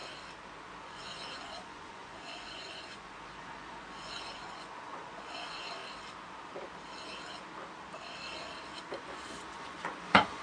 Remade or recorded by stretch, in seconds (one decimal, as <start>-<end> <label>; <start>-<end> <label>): 0.0-0.8 recorded; 0.8-5.8 remade; 5.8-9.0 recorded; 9.0-10.4 remade